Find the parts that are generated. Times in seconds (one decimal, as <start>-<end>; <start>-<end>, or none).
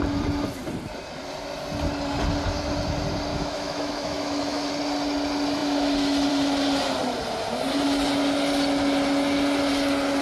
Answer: 3.3-4.7